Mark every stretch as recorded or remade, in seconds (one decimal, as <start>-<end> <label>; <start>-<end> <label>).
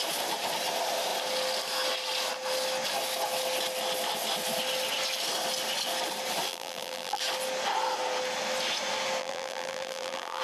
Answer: 0.0-6.5 recorded; 6.5-7.2 remade; 7.2-9.2 recorded; 9.2-10.4 remade